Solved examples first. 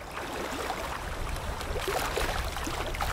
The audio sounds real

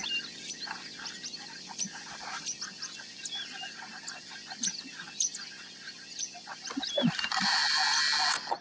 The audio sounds real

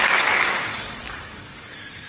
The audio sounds fake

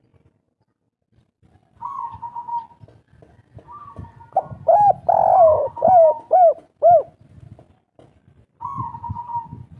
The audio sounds real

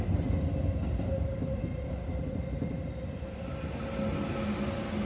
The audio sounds real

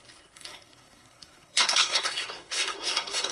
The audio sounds fake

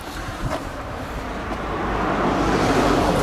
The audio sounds fake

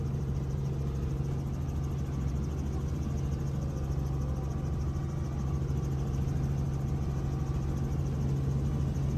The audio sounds real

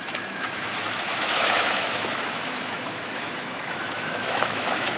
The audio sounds fake